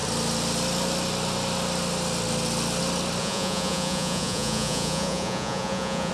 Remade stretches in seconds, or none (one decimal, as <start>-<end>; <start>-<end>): 3.2-6.1

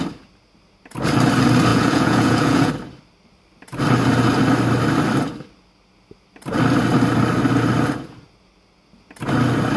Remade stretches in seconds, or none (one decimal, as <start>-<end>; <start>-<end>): 1.7-2.7

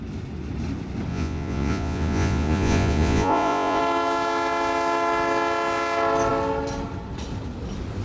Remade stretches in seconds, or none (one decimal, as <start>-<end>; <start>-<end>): 1.1-3.8

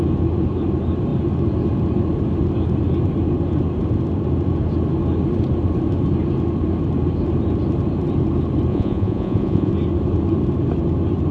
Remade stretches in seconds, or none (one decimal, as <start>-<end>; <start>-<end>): 8.7-9.7

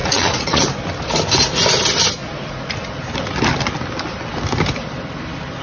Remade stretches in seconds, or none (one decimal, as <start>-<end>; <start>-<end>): 0.0-0.8; 2.2-3.0

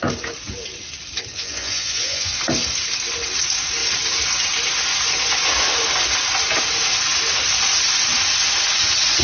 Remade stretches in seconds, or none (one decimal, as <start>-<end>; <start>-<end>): 1.3-2.4